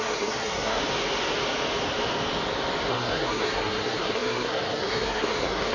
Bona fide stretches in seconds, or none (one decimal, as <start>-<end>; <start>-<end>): 0.8-2.9